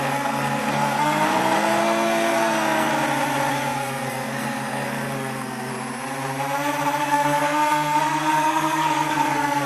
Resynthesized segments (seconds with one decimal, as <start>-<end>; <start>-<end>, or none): 0.0-2.9; 3.5-5.7; 7.0-9.7